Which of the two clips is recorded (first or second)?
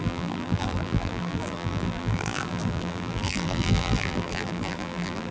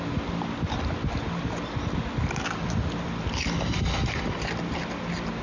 second